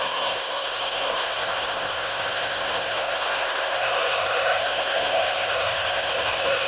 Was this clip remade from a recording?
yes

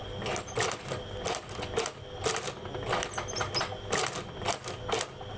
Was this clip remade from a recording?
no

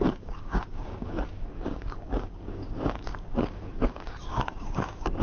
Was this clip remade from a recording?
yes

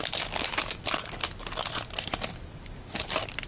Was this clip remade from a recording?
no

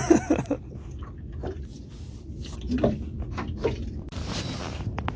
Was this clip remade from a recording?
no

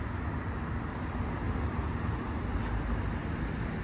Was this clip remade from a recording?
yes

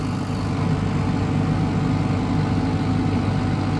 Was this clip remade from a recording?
no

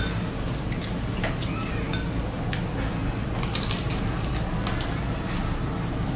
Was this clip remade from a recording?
no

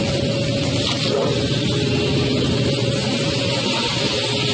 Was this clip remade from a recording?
no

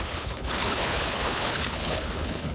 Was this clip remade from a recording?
yes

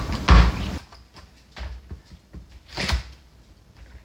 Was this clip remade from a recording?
no